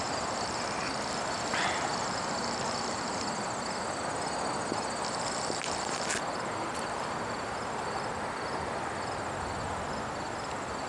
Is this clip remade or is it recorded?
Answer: recorded